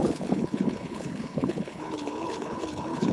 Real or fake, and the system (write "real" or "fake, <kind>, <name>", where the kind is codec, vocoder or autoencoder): fake, codec, HILCodec